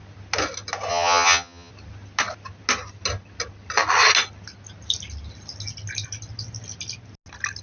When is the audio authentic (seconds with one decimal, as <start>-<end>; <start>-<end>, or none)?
0.0-0.9; 1.7-7.6